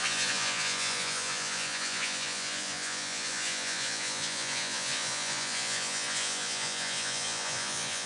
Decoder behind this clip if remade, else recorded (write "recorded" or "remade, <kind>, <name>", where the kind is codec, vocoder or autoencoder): remade, vocoder, Vocos